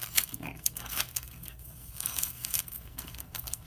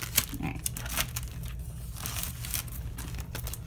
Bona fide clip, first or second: second